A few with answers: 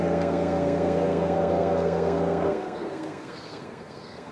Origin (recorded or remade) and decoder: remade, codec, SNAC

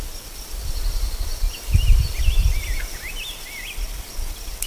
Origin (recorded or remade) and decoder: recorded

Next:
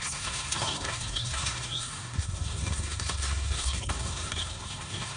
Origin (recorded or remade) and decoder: remade, codec, SNAC